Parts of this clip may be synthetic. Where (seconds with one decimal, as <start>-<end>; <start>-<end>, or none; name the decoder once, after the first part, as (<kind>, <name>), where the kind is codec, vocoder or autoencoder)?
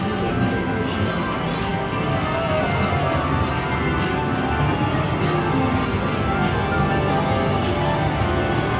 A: none